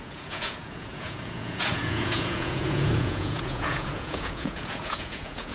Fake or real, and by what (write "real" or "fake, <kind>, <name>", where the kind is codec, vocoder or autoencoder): fake, vocoder, Vocos